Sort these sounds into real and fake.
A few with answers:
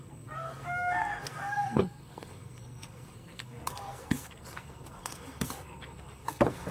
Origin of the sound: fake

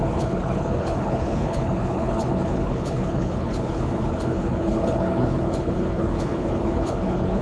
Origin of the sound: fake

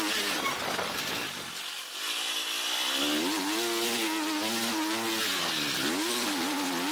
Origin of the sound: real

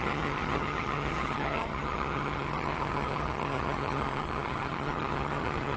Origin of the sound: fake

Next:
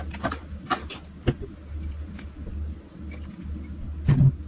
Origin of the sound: real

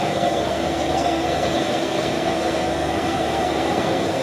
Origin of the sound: fake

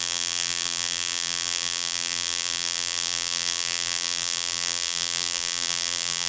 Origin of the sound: fake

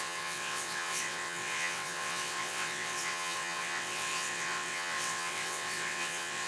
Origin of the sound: fake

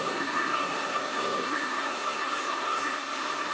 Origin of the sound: fake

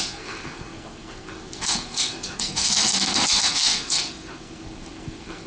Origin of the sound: fake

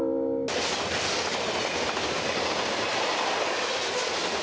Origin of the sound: real